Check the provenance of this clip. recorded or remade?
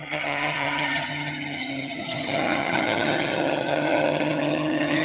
remade